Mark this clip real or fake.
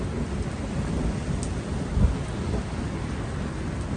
real